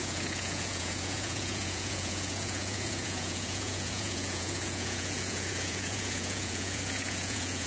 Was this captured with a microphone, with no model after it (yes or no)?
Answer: no